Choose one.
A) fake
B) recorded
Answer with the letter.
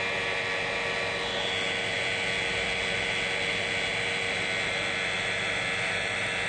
B